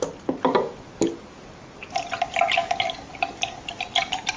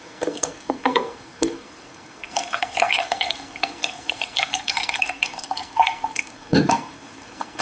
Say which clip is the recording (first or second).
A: first